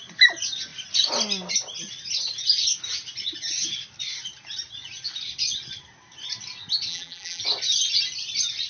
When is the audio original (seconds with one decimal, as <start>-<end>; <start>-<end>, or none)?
0.0-6.9; 7.4-8.7